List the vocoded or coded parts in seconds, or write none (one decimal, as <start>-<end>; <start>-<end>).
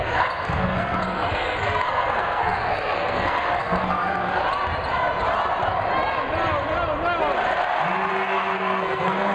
0.0-4.4; 8.1-9.3